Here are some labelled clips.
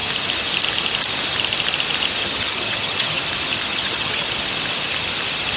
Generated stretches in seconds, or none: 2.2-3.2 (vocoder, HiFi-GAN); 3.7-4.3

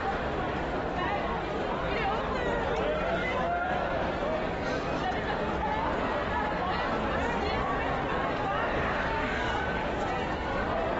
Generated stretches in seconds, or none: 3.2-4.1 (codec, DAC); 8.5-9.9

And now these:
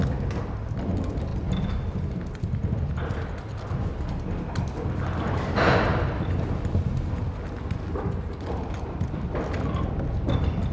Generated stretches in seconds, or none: none